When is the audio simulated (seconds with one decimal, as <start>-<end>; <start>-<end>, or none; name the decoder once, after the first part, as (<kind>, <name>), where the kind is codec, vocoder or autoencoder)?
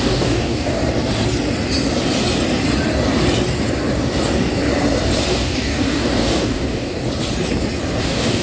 0.0-0.8 (codec, DAC); 5.3-7.0; 8.0-8.4